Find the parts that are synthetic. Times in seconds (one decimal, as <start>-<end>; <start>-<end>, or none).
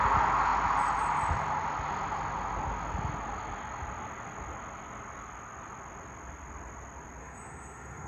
7.2-8.1